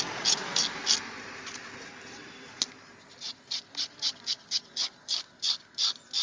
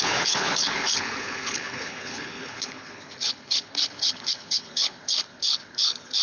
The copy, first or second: second